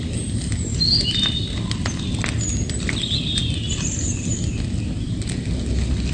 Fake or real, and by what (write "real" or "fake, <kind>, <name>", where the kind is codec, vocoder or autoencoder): real